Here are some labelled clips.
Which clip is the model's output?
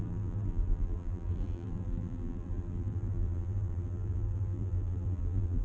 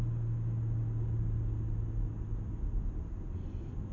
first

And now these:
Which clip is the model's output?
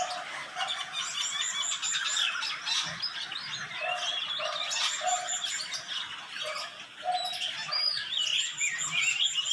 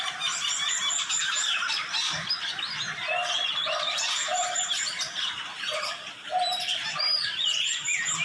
second